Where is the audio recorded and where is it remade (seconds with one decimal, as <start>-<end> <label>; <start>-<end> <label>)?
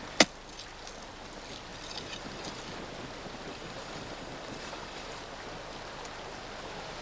0.0-1.7 recorded; 1.7-2.6 remade; 2.6-3.5 recorded; 3.5-5.2 remade; 5.2-7.0 recorded